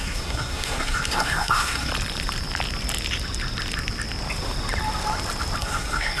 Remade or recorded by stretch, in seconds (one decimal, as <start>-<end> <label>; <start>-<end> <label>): 0.0-1.9 remade; 1.9-5.6 recorded; 5.6-6.2 remade